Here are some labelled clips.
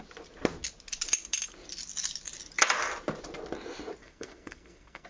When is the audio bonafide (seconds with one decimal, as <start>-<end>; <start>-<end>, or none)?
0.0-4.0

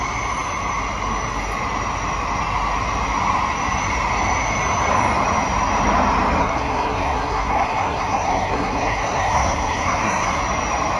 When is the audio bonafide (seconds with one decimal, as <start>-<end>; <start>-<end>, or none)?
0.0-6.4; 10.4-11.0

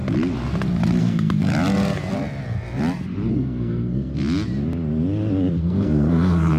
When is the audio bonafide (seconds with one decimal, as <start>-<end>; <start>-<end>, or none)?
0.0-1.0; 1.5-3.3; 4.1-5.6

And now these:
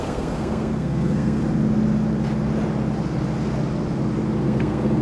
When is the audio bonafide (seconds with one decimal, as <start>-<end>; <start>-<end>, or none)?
1.4-4.4

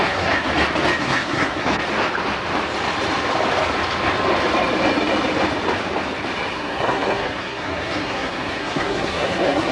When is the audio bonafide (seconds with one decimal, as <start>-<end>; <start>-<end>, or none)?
0.5-1.0; 1.7-6.5

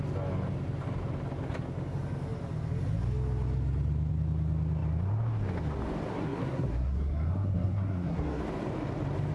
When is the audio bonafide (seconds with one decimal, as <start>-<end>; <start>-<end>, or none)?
0.0-6.1; 8.4-9.3